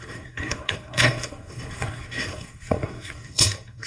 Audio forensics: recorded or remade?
remade